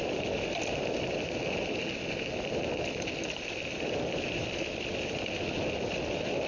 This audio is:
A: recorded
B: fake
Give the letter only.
A